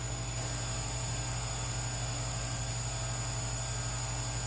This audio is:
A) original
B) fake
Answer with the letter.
A